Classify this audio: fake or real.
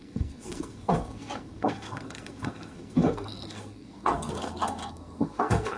fake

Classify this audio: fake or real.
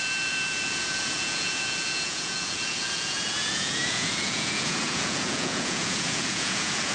fake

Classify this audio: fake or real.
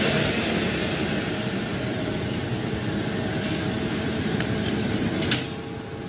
fake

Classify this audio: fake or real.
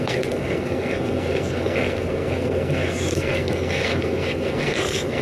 fake